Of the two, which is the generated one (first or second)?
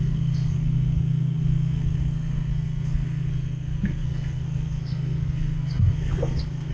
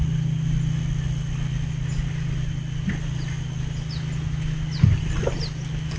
first